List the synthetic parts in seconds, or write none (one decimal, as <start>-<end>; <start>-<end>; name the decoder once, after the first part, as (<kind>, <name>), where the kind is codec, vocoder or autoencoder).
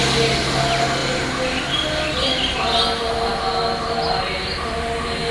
none